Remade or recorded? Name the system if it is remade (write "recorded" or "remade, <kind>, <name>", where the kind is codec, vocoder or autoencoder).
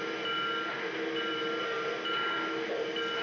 recorded